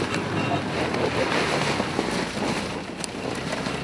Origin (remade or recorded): recorded